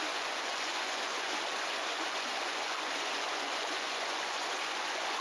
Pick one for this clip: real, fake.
fake